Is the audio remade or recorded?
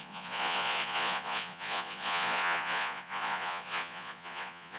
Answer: remade